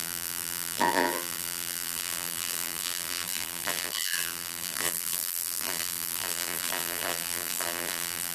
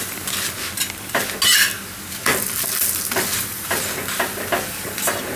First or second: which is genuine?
second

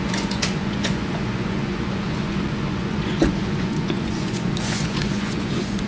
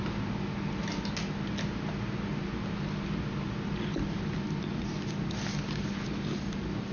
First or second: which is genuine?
second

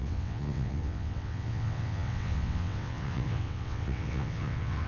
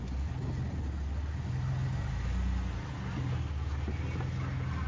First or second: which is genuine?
second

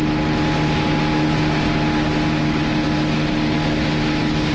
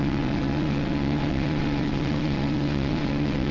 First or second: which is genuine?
first